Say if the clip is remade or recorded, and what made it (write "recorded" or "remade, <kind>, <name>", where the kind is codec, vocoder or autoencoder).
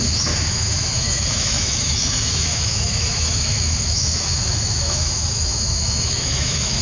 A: remade, autoencoder, DAC-VAE